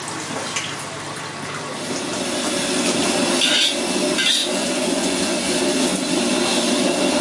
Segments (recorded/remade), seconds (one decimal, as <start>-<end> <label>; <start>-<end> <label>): 0.0-4.4 recorded; 4.4-5.5 remade; 5.5-7.2 recorded